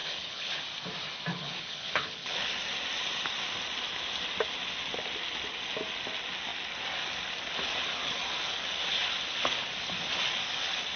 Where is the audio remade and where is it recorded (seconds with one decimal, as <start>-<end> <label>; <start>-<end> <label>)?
0.0-0.6 remade; 0.6-1.3 recorded; 1.3-2.5 remade; 2.5-11.0 recorded